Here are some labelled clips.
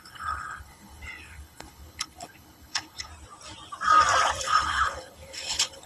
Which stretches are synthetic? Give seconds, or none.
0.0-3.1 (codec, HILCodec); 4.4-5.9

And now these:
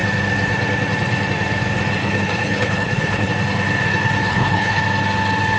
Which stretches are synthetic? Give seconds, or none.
2.0-3.3 (codec, HILCodec); 4.2-4.8

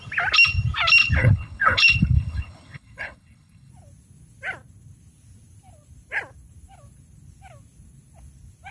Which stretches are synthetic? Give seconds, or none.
1.0-3.7 (codec, HILCodec)

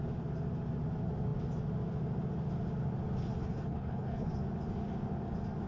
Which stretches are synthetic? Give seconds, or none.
3.4-4.3 (codec, HILCodec)

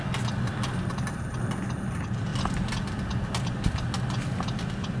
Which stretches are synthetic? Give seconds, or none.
none

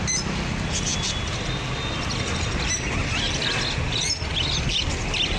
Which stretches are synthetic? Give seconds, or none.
none

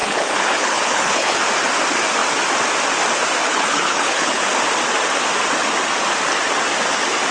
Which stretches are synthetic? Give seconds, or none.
0.0-1.4 (codec, HILCodec); 3.4-4.4